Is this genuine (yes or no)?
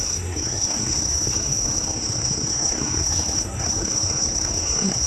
no